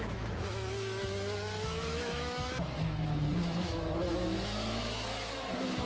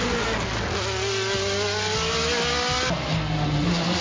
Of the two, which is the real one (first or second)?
second